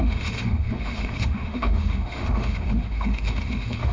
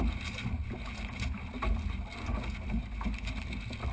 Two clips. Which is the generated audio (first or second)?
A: first